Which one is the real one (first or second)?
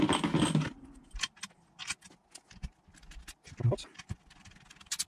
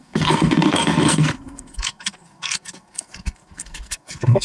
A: first